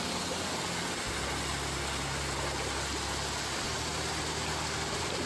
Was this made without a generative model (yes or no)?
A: yes